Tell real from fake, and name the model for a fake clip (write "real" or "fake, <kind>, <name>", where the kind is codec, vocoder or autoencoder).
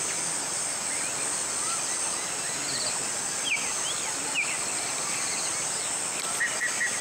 real